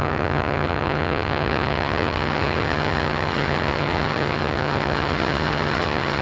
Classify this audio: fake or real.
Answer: fake